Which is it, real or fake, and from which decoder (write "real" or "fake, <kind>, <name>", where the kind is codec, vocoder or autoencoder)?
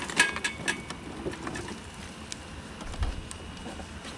real